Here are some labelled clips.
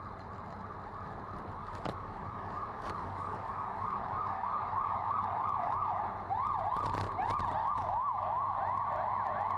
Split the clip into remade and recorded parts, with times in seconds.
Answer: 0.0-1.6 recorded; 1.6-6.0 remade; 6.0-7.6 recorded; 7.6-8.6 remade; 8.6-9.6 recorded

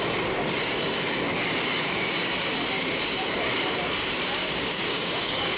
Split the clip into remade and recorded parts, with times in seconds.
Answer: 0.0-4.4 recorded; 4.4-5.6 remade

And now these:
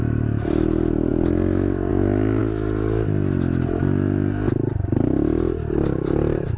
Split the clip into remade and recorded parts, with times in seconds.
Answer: 0.0-6.6 recorded

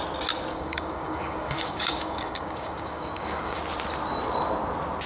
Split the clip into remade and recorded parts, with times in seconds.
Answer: 0.0-0.5 recorded; 0.5-3.6 remade; 3.6-5.1 recorded

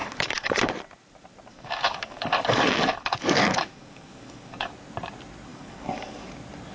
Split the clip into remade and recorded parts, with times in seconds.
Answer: 0.0-0.7 remade; 0.7-1.5 recorded; 1.5-4.7 remade; 4.7-5.5 recorded; 5.5-6.3 remade; 6.3-6.7 recorded

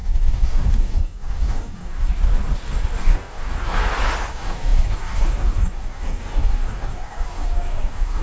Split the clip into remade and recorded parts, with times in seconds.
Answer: 0.0-2.2 remade; 2.2-3.0 recorded; 3.0-3.8 remade; 3.8-4.3 recorded; 4.3-8.2 remade